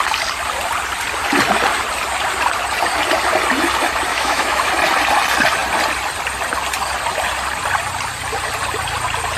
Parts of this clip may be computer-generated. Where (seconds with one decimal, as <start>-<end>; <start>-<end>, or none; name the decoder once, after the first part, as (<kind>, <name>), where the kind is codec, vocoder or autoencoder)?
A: 4.1-4.7 (autoencoder, DAC-VAE)